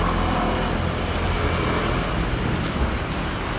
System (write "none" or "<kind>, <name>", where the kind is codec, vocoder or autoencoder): none